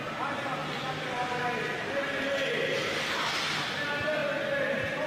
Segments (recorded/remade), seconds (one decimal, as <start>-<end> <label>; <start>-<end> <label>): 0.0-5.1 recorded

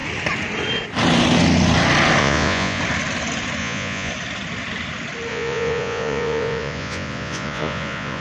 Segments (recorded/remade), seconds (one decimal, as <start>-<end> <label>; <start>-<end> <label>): 0.0-2.2 recorded; 2.2-2.8 remade; 2.8-3.6 recorded; 3.6-4.1 remade; 4.1-5.3 recorded; 5.3-8.2 remade

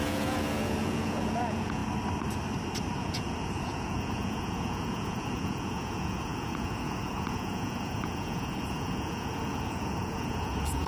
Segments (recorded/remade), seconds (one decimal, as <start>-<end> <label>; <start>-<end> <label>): 0.0-1.8 remade; 1.8-3.0 recorded; 3.0-10.9 remade